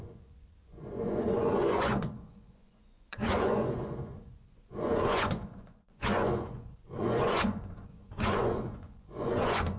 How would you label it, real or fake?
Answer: fake